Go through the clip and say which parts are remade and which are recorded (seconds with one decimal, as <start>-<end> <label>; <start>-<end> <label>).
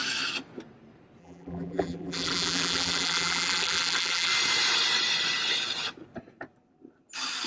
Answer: 0.0-1.2 recorded; 1.2-4.3 remade; 4.3-7.5 recorded